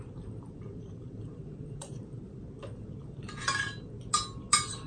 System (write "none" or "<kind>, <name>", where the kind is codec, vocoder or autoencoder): none